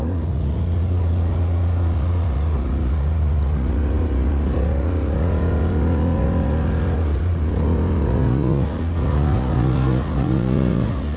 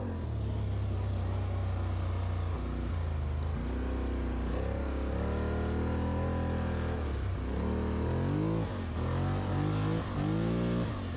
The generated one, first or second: first